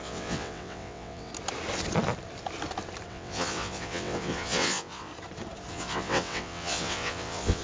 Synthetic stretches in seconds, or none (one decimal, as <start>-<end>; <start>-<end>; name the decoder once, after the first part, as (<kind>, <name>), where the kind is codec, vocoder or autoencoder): 0.0-1.3 (vocoder, WaveNeXt); 3.1-5.1; 5.7-7.6